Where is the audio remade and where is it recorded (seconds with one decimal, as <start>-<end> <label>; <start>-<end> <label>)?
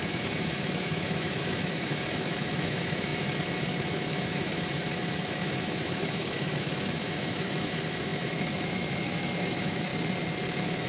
0.0-9.9 remade; 9.9-10.5 recorded; 10.5-10.9 remade